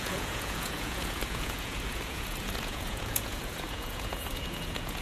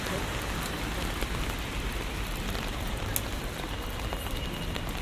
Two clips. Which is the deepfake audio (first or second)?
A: first